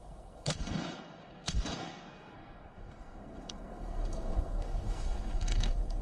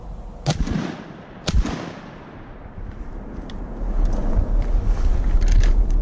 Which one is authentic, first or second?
second